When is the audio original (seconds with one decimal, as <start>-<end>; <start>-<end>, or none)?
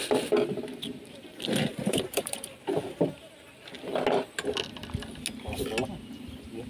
0.0-1.7; 3.8-6.7